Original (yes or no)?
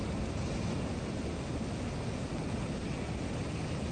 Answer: yes